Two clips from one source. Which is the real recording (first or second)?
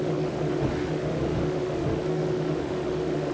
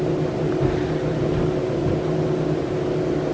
second